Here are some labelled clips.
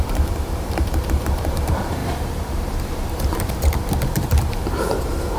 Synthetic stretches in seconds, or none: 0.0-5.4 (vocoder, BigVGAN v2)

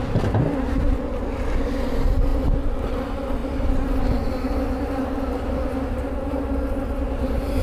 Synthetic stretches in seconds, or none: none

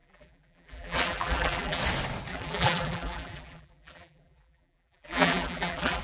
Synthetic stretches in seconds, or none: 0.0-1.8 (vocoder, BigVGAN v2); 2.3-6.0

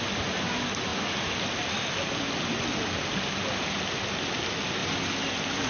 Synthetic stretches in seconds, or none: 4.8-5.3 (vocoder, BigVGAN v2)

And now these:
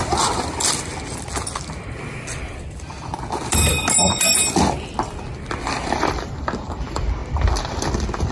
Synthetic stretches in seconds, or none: 0.0-0.9 (vocoder, BigVGAN v2); 5.6-7.2